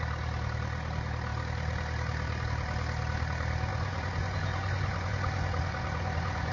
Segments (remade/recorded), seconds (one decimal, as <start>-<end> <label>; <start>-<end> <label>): 0.0-3.7 recorded; 3.7-6.5 remade